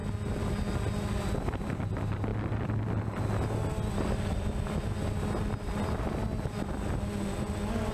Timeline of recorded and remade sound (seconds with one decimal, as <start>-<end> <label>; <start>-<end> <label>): 0.0-7.9 recorded